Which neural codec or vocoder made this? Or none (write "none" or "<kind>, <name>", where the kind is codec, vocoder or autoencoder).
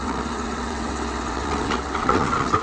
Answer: vocoder, WaveNeXt